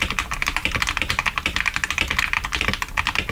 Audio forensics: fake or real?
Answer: fake